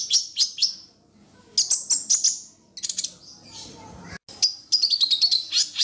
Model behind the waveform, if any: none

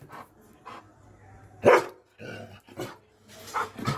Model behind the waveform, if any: none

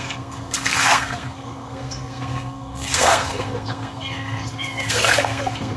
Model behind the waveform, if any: codec, SNAC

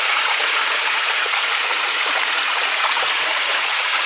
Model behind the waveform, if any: vocoder, Vocos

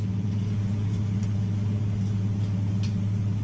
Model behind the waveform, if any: none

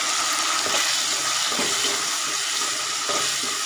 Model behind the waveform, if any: none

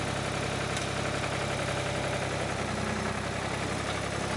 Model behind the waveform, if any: none